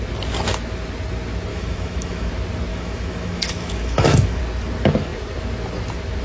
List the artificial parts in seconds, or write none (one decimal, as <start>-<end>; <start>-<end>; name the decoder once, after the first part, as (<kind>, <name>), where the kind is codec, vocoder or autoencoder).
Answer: 1.5-2.3 (autoencoder, DAC-VAE); 2.7-4.4